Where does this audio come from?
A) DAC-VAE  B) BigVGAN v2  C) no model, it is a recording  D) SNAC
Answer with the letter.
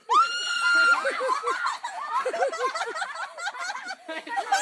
C